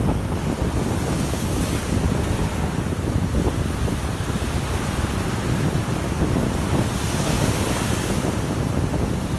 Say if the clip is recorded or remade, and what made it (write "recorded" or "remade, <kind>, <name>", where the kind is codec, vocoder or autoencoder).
recorded